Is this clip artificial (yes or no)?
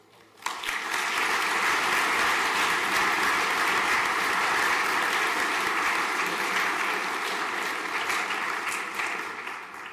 no